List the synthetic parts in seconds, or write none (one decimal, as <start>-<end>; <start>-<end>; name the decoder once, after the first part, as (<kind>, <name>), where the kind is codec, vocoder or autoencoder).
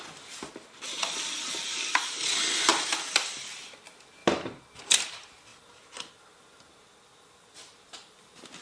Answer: 4.2-4.8 (vocoder, BigVGAN v2)